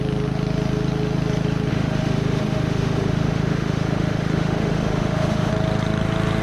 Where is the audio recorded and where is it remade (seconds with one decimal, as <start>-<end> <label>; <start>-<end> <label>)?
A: 0.0-1.7 recorded; 1.7-5.5 remade; 5.5-6.4 recorded